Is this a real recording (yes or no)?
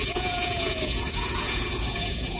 no